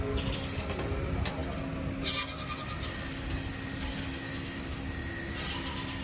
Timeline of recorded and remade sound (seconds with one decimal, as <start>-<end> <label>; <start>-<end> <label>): 0.0-6.0 recorded